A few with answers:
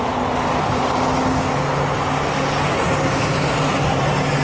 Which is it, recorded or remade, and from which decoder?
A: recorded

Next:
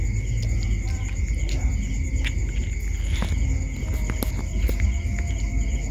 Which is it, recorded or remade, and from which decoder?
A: recorded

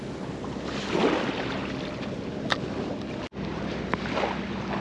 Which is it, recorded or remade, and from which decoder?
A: recorded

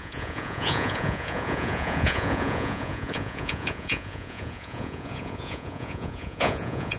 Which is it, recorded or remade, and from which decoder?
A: remade, vocoder, Vocos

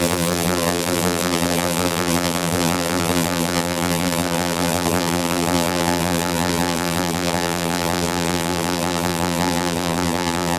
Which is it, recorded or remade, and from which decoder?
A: remade, vocoder, BigVGAN v2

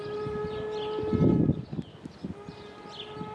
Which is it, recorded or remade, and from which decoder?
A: recorded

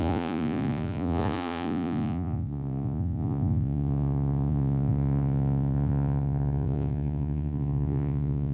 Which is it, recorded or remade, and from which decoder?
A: remade, vocoder, Vocos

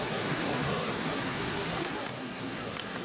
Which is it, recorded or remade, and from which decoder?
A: remade, codec, SNAC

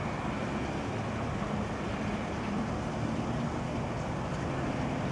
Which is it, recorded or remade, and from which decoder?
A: recorded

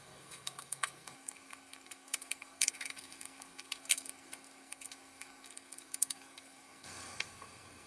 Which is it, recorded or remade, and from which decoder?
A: remade, codec, SNAC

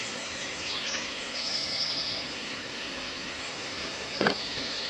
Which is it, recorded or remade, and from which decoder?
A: remade, codec, SNAC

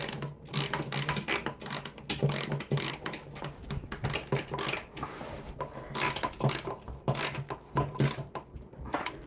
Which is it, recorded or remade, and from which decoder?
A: recorded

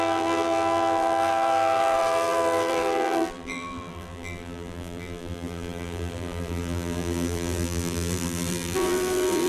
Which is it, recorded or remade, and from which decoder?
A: remade, vocoder, BigVGAN v2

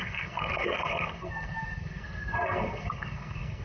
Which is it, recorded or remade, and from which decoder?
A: remade, codec, SNAC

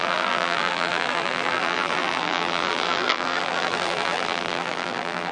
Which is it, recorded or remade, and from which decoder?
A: remade, vocoder, BigVGAN v2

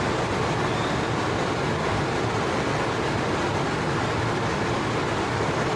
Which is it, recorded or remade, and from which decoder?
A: recorded